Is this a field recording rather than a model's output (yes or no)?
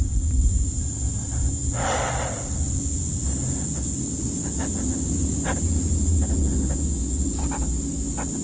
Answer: yes